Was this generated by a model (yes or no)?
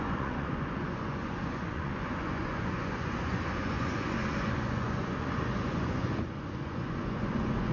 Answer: yes